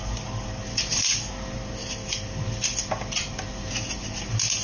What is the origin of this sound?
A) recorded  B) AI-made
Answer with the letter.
A